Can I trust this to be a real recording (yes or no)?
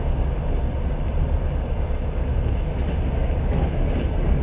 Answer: yes